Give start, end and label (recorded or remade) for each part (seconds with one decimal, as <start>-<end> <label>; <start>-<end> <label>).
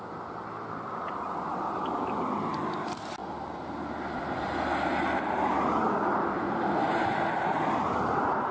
0.0-8.5 recorded